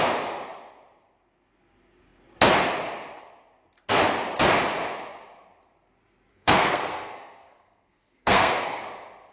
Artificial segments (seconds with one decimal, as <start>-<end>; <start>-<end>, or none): 6.3-8.8